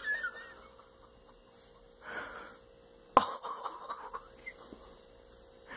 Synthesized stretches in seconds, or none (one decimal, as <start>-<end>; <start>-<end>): none

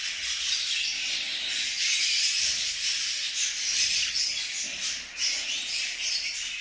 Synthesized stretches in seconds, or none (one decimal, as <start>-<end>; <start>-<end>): none